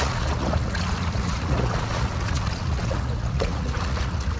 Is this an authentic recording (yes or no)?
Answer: no